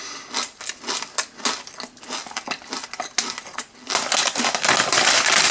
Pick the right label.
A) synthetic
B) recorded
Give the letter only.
B